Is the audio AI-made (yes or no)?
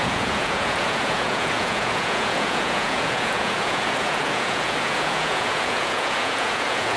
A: yes